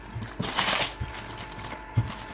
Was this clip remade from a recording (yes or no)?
no